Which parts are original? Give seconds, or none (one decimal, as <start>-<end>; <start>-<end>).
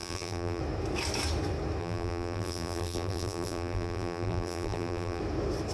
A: 0.6-1.8; 5.2-5.7